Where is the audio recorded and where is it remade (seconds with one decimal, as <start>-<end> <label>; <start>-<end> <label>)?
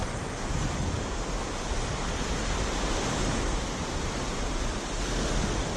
0.0-5.8 recorded